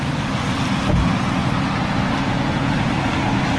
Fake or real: real